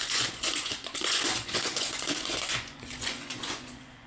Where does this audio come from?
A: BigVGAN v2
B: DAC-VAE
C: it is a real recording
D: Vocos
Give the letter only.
D